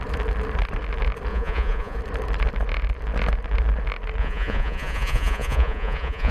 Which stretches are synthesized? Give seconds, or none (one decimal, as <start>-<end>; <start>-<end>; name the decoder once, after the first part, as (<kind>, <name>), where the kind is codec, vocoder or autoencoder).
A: 1.3-2.0 (vocoder, Vocos); 4.2-6.3